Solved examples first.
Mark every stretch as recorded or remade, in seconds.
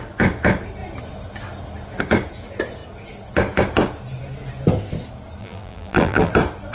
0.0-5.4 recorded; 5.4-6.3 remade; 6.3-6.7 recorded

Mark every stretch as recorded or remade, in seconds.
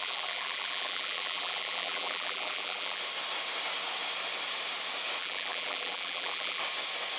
0.0-3.0 remade; 3.0-5.2 recorded; 5.2-6.6 remade; 6.6-7.2 recorded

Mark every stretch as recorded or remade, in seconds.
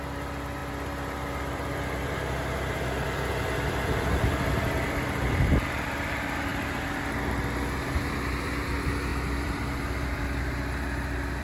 0.0-11.4 remade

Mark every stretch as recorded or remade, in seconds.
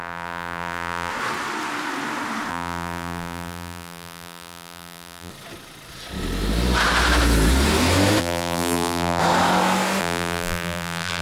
0.0-1.1 remade; 1.1-2.5 recorded; 2.5-5.3 remade; 5.3-8.2 recorded; 8.2-9.2 remade; 9.2-10.0 recorded; 10.0-11.2 remade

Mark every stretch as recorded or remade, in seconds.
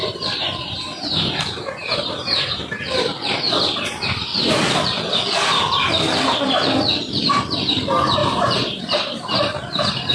0.0-4.3 remade; 4.3-7.4 recorded; 7.4-10.1 remade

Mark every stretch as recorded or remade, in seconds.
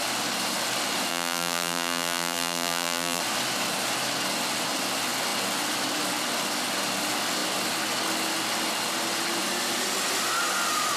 0.0-1.1 recorded; 1.1-3.2 remade; 3.2-11.0 recorded